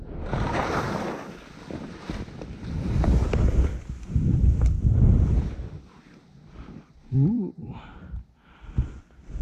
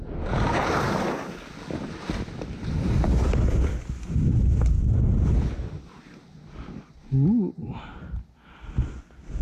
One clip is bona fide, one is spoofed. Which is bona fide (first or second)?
second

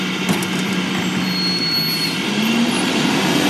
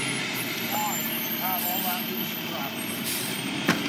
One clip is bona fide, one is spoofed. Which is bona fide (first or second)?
first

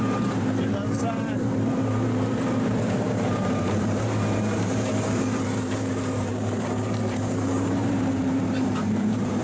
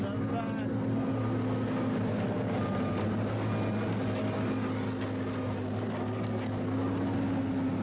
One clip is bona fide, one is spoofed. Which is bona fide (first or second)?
second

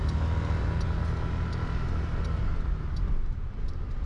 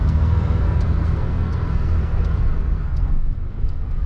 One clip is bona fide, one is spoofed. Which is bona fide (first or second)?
first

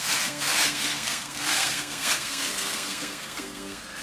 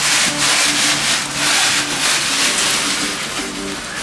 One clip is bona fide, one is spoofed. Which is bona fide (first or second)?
second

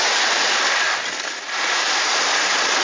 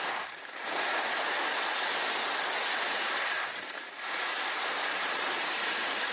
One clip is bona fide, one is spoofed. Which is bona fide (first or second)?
second